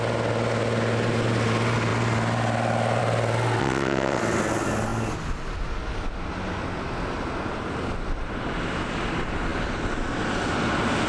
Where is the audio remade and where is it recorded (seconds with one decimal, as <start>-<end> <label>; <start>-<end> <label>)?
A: 0.0-3.6 recorded; 3.6-4.2 remade; 4.2-11.1 recorded